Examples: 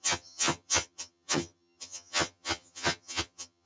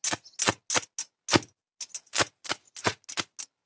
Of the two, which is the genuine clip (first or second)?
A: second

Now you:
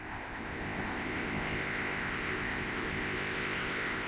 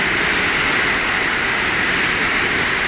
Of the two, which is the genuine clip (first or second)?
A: second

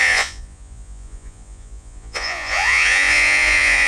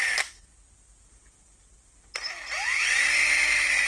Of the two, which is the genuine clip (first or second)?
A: second